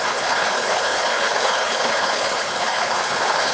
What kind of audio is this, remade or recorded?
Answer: remade